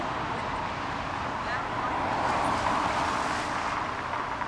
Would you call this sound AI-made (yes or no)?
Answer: no